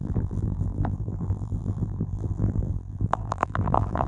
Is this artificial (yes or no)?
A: yes